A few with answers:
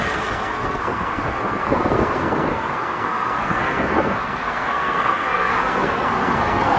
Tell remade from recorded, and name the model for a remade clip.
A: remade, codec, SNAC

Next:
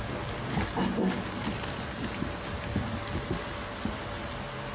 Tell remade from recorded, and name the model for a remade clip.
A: recorded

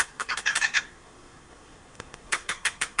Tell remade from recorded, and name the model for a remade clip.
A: remade, codec, SNAC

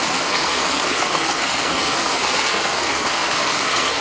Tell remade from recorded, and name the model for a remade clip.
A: remade, codec, SNAC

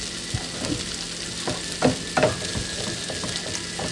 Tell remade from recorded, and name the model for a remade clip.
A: recorded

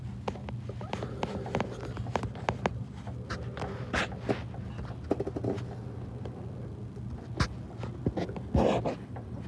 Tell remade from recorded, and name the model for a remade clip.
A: recorded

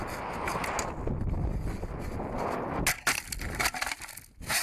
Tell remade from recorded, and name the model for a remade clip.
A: recorded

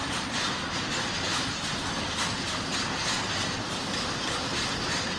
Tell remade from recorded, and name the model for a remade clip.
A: recorded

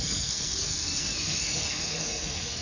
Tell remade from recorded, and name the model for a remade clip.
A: remade, codec, SNAC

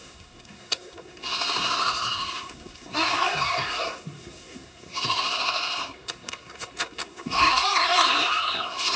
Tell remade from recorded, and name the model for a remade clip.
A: remade, codec, SNAC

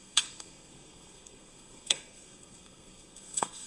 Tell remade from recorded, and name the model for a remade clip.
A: remade, codec, SNAC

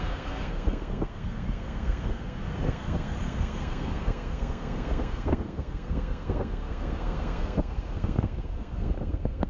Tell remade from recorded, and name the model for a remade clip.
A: remade, codec, SNAC